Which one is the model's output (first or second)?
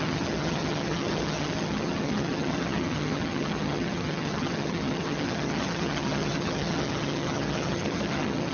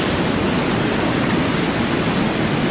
first